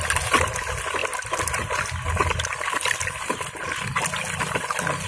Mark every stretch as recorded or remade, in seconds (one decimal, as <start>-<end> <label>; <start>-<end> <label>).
0.0-5.1 recorded